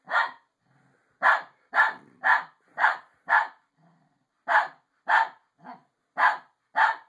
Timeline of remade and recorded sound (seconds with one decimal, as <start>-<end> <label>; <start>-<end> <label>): 0.0-2.7 recorded; 2.7-3.3 remade; 3.3-7.1 recorded